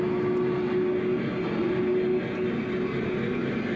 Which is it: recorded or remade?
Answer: recorded